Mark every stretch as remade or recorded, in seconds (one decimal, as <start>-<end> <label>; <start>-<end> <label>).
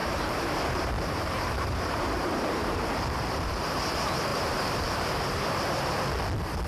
0.0-3.6 remade; 3.6-4.3 recorded; 4.3-5.8 remade; 5.8-6.7 recorded